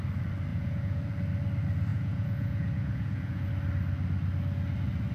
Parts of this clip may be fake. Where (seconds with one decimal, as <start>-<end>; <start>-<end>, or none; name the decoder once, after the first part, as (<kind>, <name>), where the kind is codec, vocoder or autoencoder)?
0.5-1.0 (vocoder, Vocos); 1.9-3.5